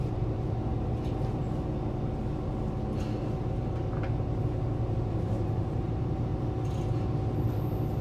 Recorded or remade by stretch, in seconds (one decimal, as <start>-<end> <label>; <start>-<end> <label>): 0.0-0.7 remade; 0.7-5.2 recorded; 5.2-6.3 remade; 6.3-8.0 recorded